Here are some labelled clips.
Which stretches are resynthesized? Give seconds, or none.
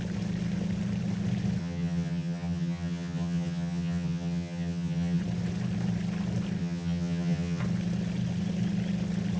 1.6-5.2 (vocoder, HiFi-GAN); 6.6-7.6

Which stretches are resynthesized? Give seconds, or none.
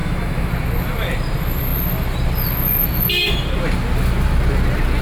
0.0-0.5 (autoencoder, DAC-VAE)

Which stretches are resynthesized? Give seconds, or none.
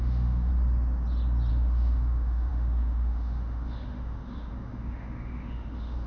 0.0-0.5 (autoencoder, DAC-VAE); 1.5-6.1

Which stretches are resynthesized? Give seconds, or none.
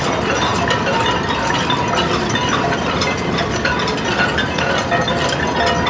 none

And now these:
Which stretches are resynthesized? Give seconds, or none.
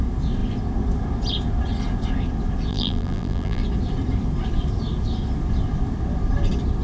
2.7-3.6 (vocoder, BigVGAN v2)